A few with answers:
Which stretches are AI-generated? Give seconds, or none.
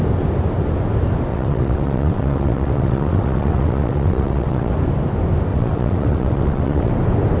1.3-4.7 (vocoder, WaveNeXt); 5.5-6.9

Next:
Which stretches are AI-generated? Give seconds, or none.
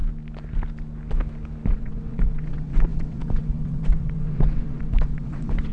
1.7-5.7 (vocoder, WaveNeXt)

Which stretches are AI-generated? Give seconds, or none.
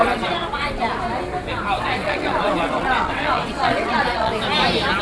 0.0-0.8 (vocoder, WaveNeXt); 2.0-4.3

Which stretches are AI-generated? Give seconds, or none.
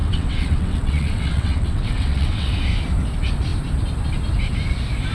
0.0-2.5 (vocoder, WaveNeXt)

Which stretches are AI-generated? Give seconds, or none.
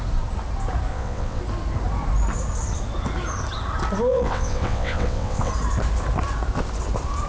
0.9-1.4 (vocoder, WaveNeXt); 4.1-5.5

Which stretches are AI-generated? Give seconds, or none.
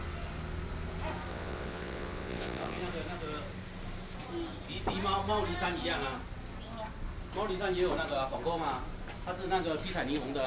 1.3-2.8 (vocoder, WaveNeXt)